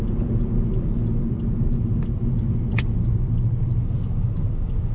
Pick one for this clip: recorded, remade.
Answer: recorded